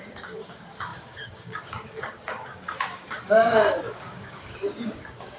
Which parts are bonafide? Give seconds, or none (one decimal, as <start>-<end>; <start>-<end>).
none